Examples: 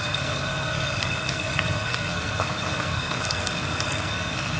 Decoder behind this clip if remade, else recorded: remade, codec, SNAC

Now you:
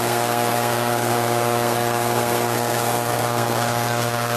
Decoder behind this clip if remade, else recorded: remade, codec, SNAC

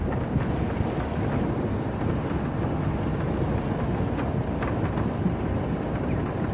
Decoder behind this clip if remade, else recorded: recorded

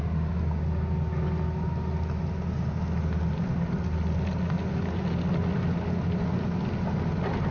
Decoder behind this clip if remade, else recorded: recorded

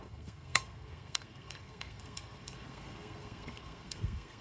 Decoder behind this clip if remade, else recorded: remade, codec, SNAC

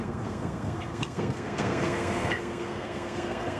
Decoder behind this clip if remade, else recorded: remade, codec, SNAC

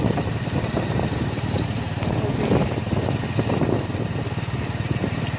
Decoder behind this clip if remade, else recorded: recorded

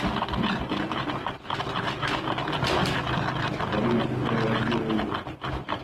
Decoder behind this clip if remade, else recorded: recorded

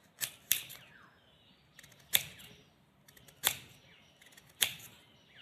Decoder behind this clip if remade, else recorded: recorded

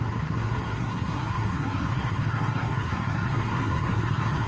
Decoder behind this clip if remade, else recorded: remade, codec, SNAC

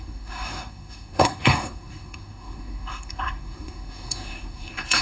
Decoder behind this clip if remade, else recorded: remade, codec, SNAC